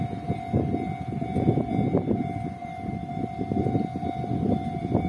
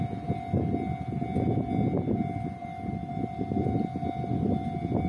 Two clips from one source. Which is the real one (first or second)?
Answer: second